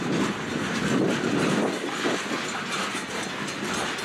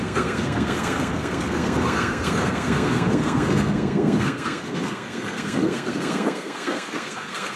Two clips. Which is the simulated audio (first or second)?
second